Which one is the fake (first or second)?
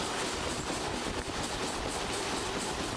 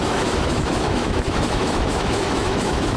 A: second